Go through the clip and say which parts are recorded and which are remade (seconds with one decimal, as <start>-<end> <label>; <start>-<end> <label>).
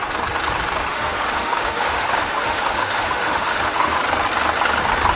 0.0-0.9 recorded; 0.9-4.0 remade; 4.0-5.2 recorded